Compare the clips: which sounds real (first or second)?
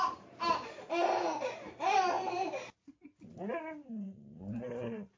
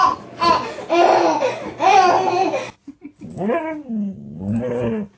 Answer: second